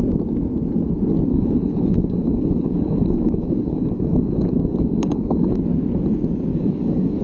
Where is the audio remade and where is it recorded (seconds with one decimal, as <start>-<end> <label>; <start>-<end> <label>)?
0.0-1.3 recorded; 1.3-5.6 remade; 5.6-6.5 recorded; 6.5-7.2 remade

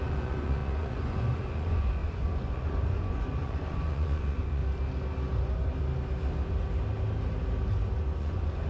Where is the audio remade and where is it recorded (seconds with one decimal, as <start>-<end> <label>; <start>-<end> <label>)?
0.0-4.6 remade; 4.6-8.2 recorded; 8.2-8.7 remade